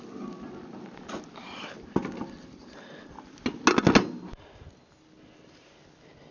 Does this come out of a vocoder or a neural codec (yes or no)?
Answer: no